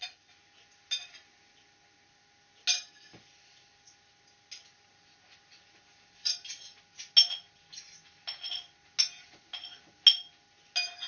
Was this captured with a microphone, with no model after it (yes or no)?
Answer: yes